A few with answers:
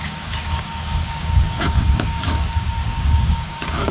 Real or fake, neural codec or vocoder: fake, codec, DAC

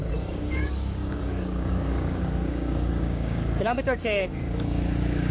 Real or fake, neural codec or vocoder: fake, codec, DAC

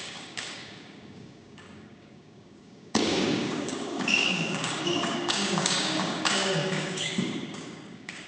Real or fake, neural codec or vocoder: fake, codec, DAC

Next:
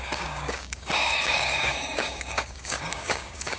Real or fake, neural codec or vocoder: fake, codec, DAC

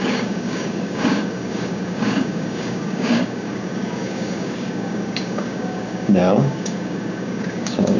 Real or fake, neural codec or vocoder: fake, codec, DAC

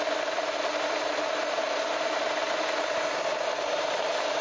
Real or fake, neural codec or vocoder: real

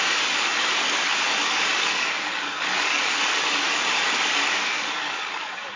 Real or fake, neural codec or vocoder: fake, codec, DAC